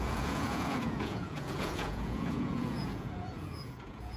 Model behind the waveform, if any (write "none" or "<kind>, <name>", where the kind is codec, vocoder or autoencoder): vocoder, Vocos